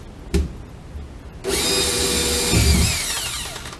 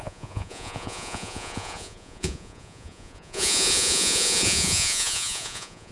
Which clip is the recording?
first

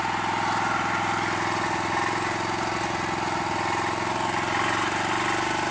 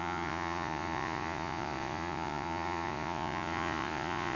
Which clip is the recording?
first